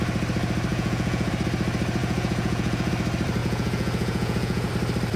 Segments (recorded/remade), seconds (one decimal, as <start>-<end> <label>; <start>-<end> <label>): 0.0-0.7 recorded; 0.7-1.3 remade; 1.3-2.0 recorded; 2.0-2.9 remade; 2.9-3.4 recorded; 3.4-4.7 remade; 4.7-5.2 recorded